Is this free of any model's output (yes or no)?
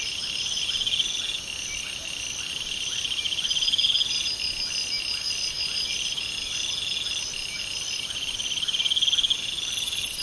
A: yes